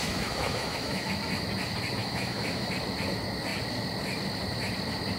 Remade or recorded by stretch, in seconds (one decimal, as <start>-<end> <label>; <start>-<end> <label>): 0.0-1.1 remade; 1.1-2.0 recorded; 2.0-2.7 remade; 2.7-5.2 recorded